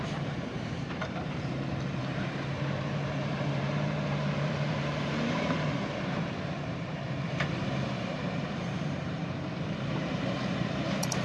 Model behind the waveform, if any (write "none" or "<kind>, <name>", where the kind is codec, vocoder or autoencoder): vocoder, BigVGAN v2